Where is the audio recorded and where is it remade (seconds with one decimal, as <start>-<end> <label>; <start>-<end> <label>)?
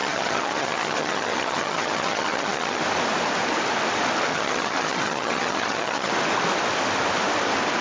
0.0-2.8 remade; 2.8-4.3 recorded; 4.3-6.1 remade; 6.1-7.8 recorded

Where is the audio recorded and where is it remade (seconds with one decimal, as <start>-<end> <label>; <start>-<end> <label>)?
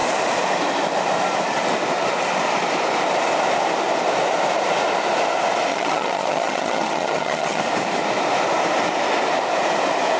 0.0-5.7 recorded; 5.7-7.6 remade; 7.6-10.2 recorded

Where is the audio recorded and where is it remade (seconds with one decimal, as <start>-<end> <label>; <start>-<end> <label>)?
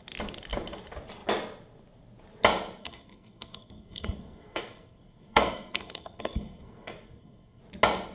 0.0-2.8 recorded; 2.8-7.6 remade; 7.6-8.1 recorded